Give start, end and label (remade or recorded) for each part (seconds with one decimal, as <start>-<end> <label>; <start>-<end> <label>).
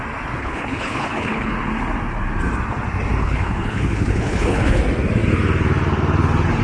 0.0-0.4 recorded; 0.4-1.5 remade; 1.5-3.2 recorded; 3.2-4.8 remade; 4.8-6.6 recorded